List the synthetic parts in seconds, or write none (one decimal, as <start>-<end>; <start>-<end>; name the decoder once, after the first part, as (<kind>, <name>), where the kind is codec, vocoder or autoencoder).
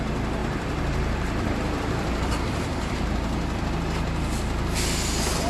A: 0.4-3.7 (vocoder, BigVGAN v2)